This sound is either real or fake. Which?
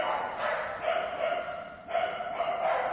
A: real